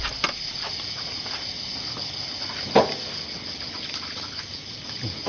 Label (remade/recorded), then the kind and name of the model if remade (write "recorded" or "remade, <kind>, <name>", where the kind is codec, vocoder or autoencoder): recorded